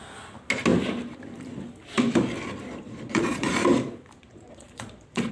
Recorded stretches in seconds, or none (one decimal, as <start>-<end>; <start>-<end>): 0.0-2.8; 3.5-4.2